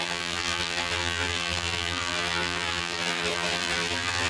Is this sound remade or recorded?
remade